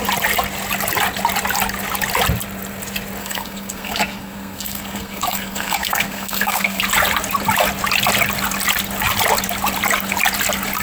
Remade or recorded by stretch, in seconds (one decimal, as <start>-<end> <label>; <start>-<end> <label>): 0.0-3.2 recorded; 3.2-6.8 remade; 6.8-10.8 recorded